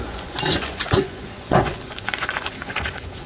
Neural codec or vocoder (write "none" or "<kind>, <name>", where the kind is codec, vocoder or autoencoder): vocoder, Vocos